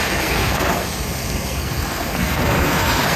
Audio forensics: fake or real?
fake